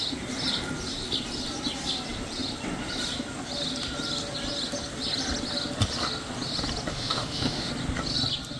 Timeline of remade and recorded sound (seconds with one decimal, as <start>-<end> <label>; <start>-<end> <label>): 0.0-6.9 recorded; 6.9-7.7 remade; 7.7-8.6 recorded